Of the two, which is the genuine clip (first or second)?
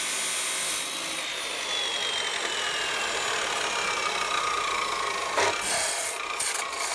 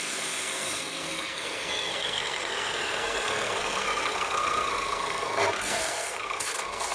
first